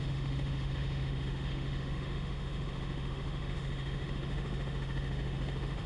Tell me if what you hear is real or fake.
fake